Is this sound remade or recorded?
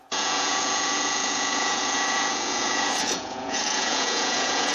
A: remade